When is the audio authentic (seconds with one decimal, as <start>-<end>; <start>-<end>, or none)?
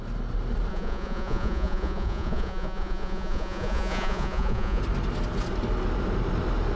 0.0-0.7; 4.8-6.8